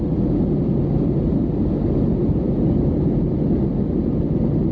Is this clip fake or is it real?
real